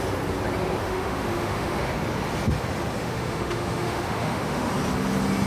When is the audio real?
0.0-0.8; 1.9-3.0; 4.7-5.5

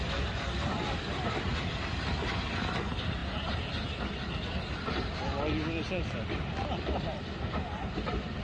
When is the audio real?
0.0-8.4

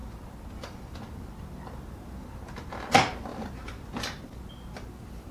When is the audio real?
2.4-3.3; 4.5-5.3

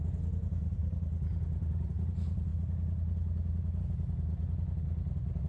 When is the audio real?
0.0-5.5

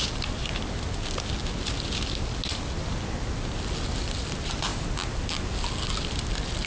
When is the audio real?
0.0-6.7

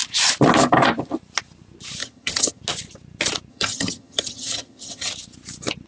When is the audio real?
0.0-2.0; 2.6-3.5; 5.1-5.9

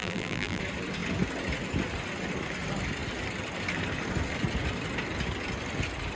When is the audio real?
0.6-6.2